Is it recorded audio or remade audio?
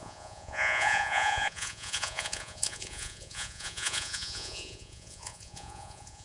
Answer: remade